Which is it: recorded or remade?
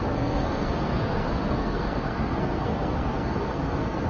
remade